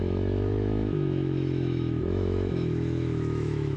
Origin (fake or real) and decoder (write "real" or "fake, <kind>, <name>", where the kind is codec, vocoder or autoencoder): fake, autoencoder, DAC-VAE